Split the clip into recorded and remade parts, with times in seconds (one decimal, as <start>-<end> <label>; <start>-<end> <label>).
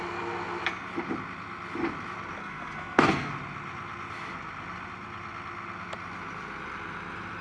0.0-2.4 recorded; 2.4-3.3 remade; 3.3-7.4 recorded